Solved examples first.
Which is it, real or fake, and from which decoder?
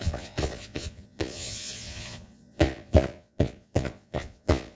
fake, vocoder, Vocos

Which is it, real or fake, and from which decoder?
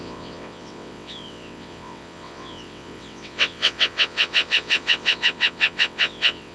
fake, vocoder, WaveNeXt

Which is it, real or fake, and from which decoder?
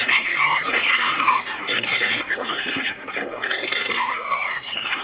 fake, codec, SNAC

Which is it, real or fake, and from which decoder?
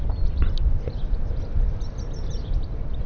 real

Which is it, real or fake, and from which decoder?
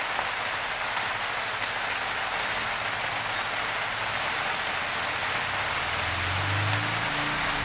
real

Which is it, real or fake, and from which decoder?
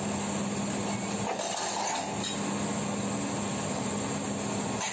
real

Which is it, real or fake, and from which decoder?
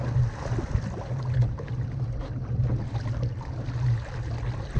real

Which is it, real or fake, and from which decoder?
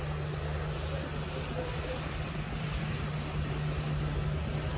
real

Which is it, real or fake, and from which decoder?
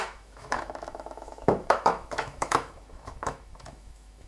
fake, autoencoder, DAC-VAE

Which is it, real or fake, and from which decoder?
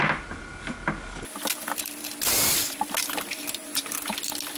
real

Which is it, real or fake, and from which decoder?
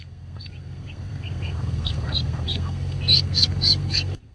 fake, codec, SNAC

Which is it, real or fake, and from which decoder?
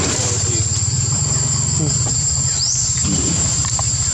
fake, vocoder, BigVGAN v2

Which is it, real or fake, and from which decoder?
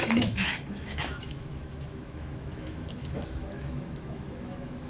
fake, autoencoder, DAC-VAE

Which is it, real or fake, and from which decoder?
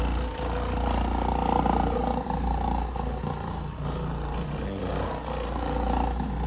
real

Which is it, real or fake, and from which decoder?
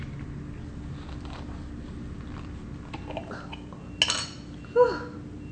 real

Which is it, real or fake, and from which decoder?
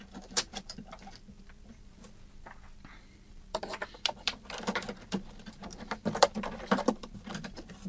fake, vocoder, BigVGAN v2